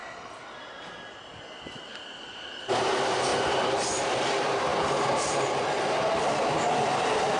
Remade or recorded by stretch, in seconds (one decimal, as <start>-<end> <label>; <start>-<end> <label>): 0.0-7.4 recorded